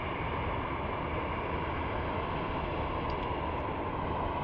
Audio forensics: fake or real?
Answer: real